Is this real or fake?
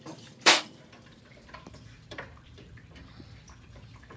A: fake